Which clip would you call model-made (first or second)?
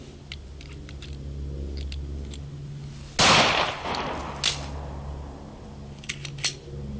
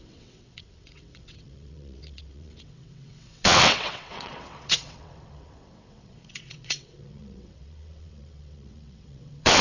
second